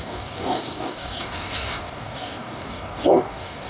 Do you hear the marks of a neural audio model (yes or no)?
yes